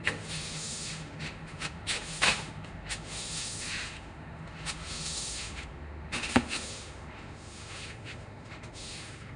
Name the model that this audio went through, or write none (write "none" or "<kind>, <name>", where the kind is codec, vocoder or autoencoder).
autoencoder, DAC-VAE